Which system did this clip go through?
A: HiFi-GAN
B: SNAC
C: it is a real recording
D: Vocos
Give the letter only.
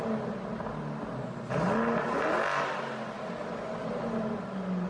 C